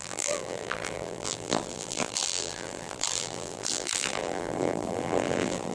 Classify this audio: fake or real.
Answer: fake